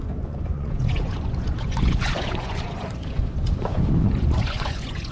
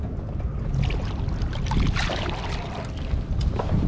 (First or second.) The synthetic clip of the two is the first